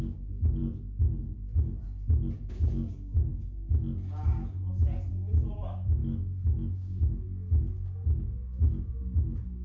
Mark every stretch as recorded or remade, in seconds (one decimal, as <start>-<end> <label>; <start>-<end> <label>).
0.0-0.6 remade; 0.6-2.5 recorded; 2.5-3.3 remade; 3.3-5.1 recorded; 5.1-9.6 remade